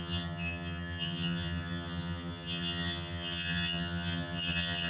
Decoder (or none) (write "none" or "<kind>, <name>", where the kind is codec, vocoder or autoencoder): vocoder, HiFi-GAN